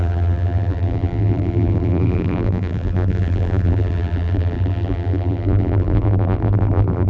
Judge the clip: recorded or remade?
remade